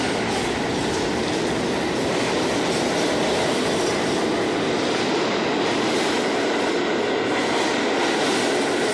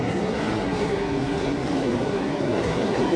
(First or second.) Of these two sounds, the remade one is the second